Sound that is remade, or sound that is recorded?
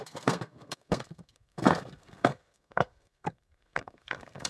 remade